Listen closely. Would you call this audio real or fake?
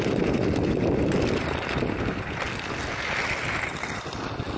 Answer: real